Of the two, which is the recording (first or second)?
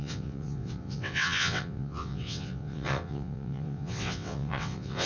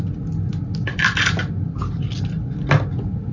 second